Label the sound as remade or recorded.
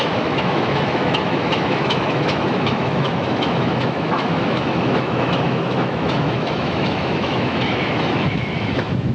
remade